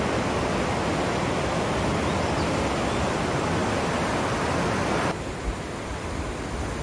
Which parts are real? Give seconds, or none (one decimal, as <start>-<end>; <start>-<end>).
0.0-6.8